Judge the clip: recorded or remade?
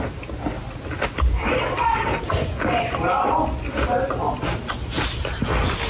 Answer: recorded